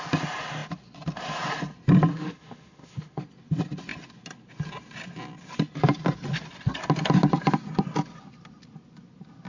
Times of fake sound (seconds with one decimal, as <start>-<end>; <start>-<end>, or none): 2.1-3.2